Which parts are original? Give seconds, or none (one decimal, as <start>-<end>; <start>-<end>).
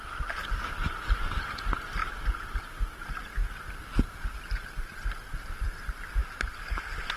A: 0.0-7.2